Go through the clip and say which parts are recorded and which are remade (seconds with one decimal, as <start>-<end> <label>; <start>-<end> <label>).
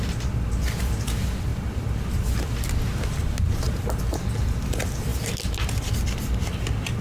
0.0-5.1 remade; 5.1-5.9 recorded; 5.9-7.0 remade